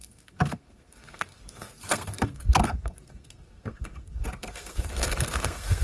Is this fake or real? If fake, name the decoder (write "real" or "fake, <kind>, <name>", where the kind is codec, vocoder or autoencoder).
fake, codec, SNAC